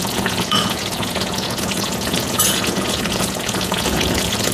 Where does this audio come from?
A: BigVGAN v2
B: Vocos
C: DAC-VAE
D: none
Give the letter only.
B